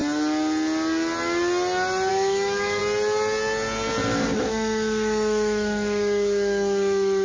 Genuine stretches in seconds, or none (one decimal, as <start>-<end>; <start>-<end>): 0.0-2.1; 2.8-4.4